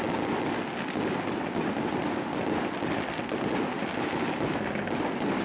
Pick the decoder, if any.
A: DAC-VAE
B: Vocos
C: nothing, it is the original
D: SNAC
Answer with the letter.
C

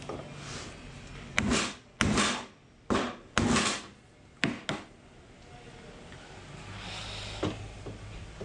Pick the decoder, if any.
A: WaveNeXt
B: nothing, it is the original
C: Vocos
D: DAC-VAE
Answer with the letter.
B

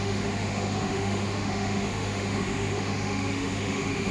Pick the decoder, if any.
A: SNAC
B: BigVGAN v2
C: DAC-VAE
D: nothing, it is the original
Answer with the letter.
C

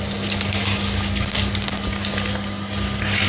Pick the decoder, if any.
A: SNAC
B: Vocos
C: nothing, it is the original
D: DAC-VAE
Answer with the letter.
C